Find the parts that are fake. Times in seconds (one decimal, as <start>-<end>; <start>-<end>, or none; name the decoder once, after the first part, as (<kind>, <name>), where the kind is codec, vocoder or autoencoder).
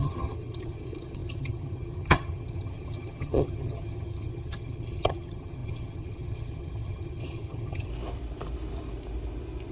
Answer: 0.0-7.9 (vocoder, HiFi-GAN)